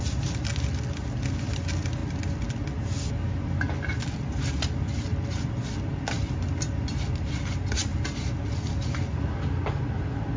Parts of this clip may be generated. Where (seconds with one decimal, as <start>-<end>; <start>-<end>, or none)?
none